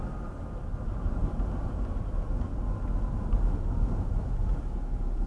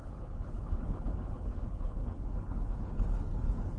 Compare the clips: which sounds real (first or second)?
first